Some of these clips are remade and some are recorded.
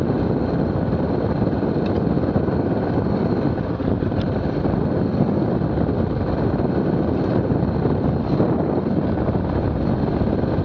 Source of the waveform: recorded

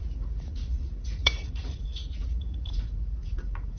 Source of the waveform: remade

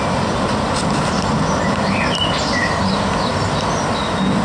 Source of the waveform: recorded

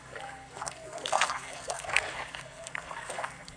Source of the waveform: remade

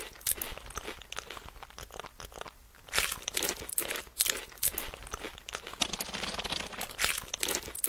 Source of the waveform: recorded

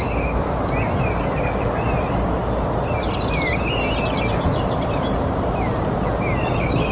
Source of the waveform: recorded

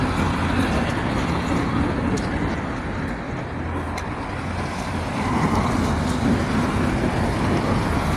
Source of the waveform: recorded